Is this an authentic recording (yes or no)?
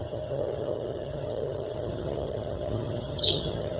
no